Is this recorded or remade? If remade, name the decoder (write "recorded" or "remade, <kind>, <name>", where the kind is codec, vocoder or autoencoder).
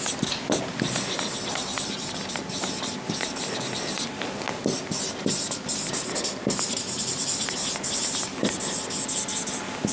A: recorded